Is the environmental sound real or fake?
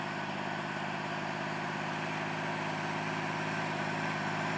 real